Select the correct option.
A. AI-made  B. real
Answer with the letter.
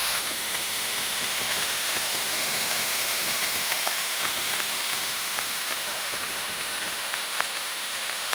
A